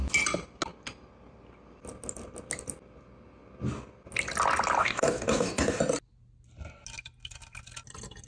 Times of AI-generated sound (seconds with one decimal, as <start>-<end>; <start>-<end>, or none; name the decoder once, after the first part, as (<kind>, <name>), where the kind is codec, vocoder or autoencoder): 4.8-5.8 (codec, DAC)

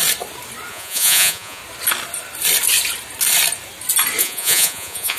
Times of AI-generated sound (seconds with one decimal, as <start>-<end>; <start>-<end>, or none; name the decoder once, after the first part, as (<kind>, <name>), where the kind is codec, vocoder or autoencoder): 0.7-1.6 (vocoder, Vocos); 4.2-5.2